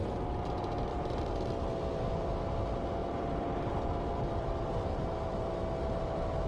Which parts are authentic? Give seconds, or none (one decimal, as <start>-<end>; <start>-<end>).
0.0-0.9; 1.6-3.0; 3.7-6.5